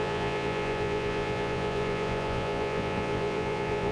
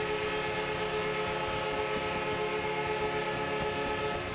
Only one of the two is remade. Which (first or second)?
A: first